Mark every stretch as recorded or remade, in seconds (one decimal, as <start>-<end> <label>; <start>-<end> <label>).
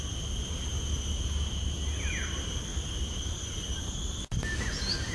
0.0-5.1 recorded